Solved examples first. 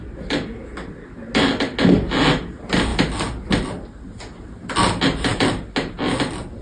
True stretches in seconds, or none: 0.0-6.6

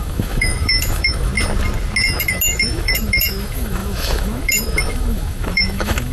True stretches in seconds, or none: 1.3-2.2